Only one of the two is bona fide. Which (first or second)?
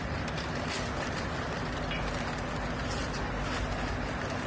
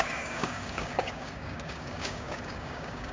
first